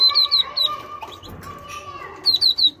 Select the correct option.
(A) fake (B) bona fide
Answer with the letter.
B